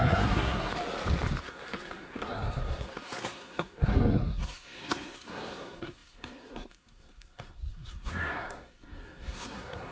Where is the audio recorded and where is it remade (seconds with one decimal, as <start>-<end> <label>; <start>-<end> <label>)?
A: 0.0-0.7 remade; 0.7-1.4 recorded; 1.4-9.9 remade